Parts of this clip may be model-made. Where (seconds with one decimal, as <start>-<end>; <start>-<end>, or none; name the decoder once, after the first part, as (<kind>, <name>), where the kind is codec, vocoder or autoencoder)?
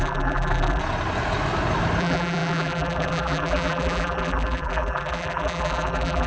0.0-0.8 (vocoder, BigVGAN v2); 2.0-6.3